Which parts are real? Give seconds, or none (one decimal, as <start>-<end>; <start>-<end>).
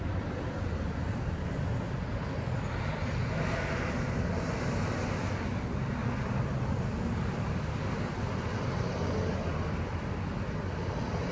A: 0.0-11.3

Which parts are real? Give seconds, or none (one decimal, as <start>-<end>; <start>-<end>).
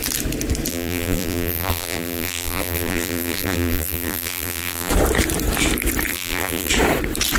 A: 0.0-0.7; 4.9-6.1; 6.7-7.4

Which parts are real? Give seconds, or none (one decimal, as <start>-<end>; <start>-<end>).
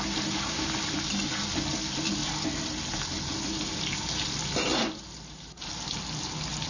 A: 0.0-6.7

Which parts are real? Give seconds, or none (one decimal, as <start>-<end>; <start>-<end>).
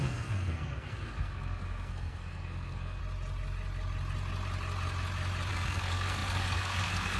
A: 3.0-5.5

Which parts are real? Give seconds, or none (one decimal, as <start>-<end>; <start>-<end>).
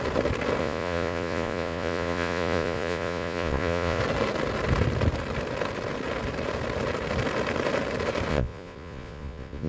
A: 0.0-0.6; 4.0-8.3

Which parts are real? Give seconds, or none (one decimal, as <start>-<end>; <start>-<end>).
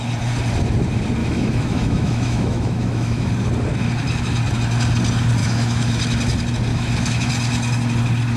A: 0.0-1.2; 3.3-5.4; 6.0-6.7; 7.3-8.4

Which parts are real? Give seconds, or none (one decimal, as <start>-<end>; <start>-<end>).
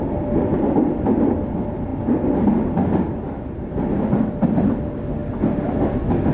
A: 0.0-6.3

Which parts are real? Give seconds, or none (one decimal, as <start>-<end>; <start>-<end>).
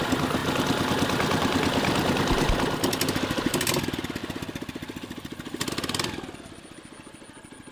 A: 0.0-7.7